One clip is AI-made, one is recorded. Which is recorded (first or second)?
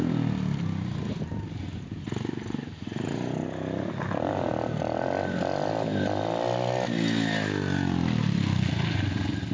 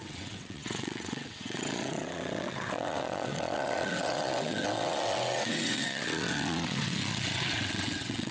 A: first